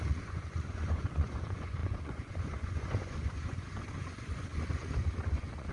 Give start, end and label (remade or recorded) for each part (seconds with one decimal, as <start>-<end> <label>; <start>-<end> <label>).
0.0-5.7 remade